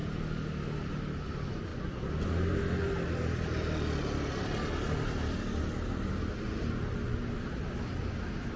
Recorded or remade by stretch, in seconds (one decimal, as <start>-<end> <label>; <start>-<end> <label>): 0.0-8.6 recorded